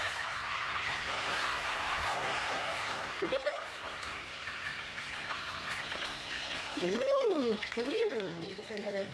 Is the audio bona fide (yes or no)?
no